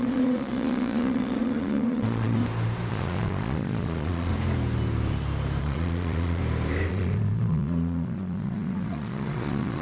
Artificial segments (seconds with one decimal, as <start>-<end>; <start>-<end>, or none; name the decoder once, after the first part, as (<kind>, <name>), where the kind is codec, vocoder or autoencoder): 0.0-2.4 (vocoder, Vocos); 2.9-4.3; 5.6-6.4; 6.9-9.8